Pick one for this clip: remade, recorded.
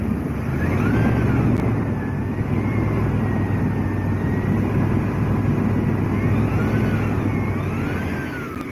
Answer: recorded